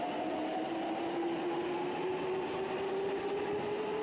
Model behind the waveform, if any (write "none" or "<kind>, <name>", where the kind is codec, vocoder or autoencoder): none